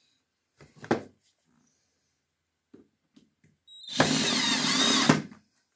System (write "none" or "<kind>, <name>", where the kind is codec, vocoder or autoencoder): none